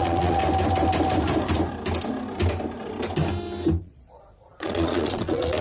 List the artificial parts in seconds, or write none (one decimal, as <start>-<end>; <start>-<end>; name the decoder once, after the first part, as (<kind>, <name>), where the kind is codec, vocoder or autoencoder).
0.0-0.4 (vocoder, Vocos); 3.8-5.6